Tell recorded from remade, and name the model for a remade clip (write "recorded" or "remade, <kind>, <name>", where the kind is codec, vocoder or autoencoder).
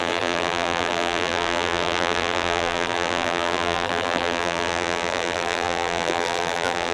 remade, vocoder, BigVGAN v2